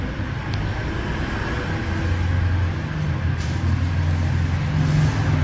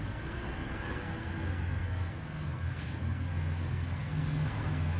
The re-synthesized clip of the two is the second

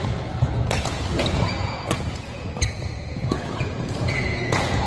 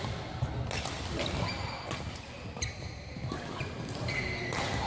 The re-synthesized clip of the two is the first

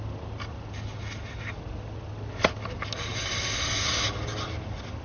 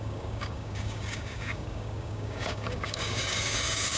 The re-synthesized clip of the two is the second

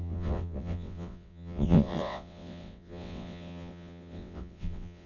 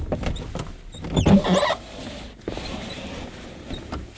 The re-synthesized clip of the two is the first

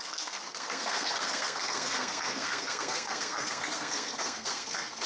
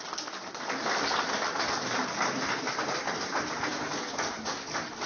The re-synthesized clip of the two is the first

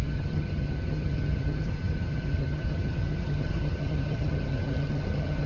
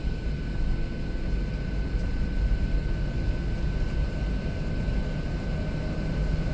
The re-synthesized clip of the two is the first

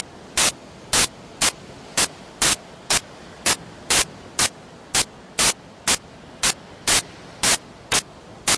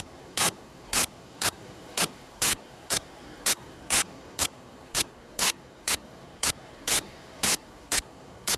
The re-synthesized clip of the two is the second